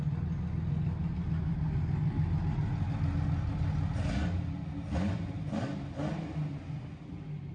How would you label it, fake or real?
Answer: real